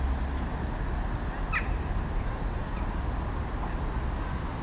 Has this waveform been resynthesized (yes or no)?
no